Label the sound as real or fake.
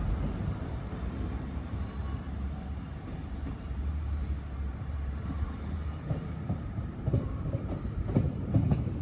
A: fake